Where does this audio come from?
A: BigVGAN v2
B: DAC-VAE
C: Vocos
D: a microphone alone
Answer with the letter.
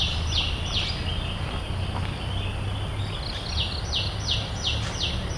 D